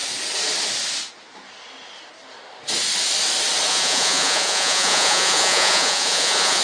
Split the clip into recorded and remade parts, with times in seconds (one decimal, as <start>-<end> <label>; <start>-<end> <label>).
0.0-3.7 recorded; 3.7-6.6 remade